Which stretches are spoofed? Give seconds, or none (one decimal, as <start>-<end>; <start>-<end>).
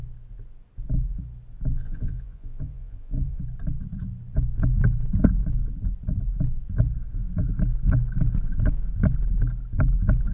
1.7-3.4